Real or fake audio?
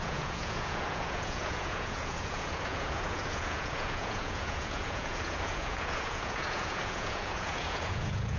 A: fake